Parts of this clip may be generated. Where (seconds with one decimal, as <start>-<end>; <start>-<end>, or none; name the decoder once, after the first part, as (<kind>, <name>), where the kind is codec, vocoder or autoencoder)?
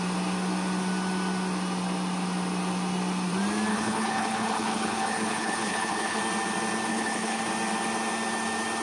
3.7-6.2 (codec, HILCodec); 6.9-7.4